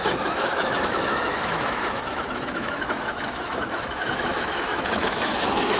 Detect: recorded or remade remade